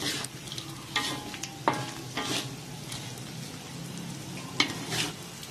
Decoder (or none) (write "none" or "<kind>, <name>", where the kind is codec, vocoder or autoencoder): none